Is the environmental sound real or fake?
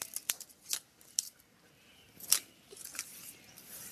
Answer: real